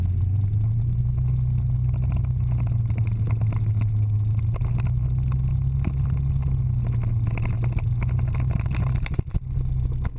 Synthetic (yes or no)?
no